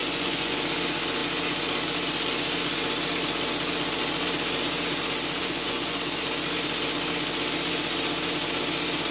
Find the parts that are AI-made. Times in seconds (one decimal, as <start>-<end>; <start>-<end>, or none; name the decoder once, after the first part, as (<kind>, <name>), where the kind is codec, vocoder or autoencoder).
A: 0.0-0.6 (vocoder, Vocos); 5.4-6.0